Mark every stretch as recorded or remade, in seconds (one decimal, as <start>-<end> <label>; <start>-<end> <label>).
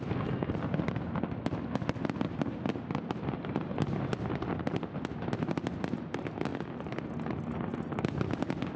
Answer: 0.0-8.8 recorded